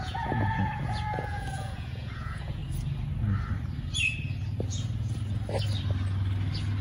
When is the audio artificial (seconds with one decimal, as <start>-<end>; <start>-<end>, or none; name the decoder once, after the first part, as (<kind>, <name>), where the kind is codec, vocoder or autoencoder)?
0.0-2.6 (vocoder, Vocos)